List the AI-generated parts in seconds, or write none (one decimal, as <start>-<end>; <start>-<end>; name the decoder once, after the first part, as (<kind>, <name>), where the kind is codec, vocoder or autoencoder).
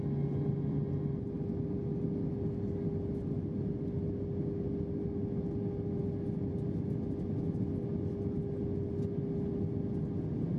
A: none